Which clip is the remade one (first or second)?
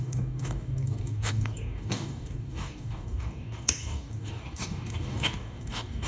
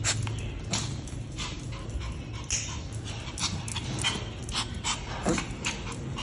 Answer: first